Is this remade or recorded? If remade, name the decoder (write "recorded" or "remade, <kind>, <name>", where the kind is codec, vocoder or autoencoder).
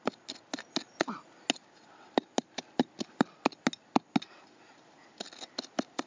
recorded